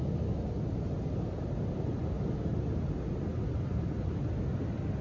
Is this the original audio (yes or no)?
yes